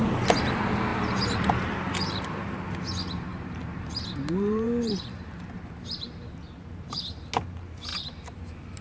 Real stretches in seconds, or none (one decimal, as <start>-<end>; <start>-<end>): 0.0-0.9; 2.8-3.3; 7.2-7.9; 8.4-8.8